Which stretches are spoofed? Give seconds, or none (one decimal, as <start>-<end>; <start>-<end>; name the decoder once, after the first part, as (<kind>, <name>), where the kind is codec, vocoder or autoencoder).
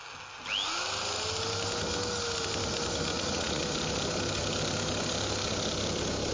3.1-3.6 (vocoder, Vocos)